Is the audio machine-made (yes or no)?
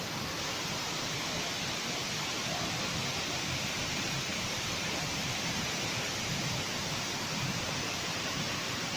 yes